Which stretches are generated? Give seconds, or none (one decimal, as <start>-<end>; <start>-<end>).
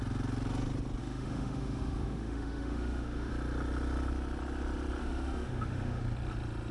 1.0-3.3; 5.0-6.0